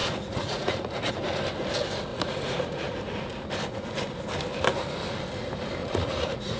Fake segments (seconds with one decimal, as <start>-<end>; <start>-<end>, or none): 0.0-1.1; 2.1-3.3; 5.8-6.6